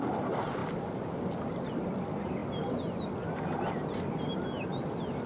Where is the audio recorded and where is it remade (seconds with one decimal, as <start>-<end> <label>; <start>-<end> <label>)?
0.0-5.3 recorded